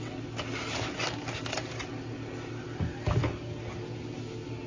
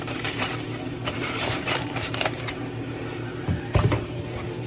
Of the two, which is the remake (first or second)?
second